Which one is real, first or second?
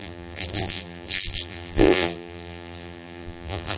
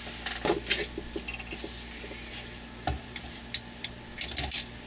second